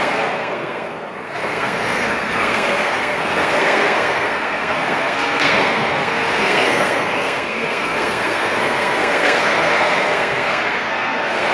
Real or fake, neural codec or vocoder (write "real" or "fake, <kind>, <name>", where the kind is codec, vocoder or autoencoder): fake, codec, SNAC